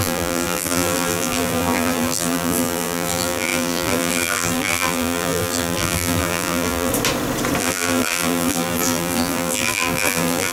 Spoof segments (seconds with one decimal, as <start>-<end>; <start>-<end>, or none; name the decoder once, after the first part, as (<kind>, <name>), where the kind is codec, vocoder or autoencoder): 0.0-6.9 (vocoder, BigVGAN v2); 7.6-10.5